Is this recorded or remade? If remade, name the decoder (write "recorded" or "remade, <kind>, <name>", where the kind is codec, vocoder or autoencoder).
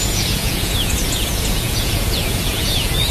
remade, vocoder, Vocos